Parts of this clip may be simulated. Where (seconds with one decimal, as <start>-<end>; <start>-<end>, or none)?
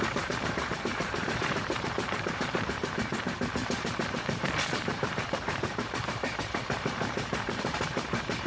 0.0-8.5